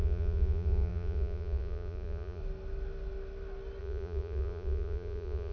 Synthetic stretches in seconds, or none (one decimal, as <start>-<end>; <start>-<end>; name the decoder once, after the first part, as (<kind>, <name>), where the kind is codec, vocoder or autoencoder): 0.0-2.4 (vocoder, Vocos); 3.8-5.5